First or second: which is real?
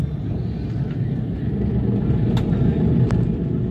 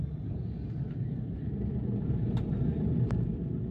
first